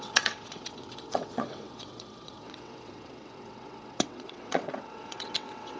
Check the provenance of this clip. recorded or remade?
remade